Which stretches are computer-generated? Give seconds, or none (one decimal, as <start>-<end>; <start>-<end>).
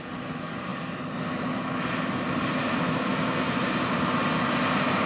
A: 0.0-0.7; 3.8-5.1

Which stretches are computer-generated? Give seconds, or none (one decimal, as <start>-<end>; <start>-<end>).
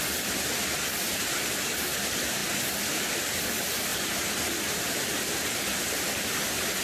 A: 2.4-3.4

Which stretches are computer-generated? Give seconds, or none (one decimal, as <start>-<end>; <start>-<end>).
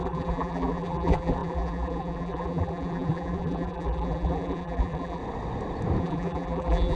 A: 0.0-5.2; 6.0-7.0